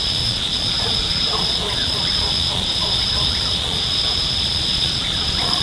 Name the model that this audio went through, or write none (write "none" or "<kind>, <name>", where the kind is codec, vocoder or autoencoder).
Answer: vocoder, Vocos